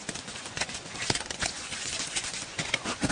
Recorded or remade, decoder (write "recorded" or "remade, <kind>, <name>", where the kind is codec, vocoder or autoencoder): remade, vocoder, Vocos